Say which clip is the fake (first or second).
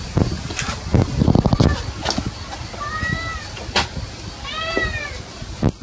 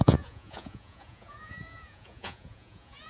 second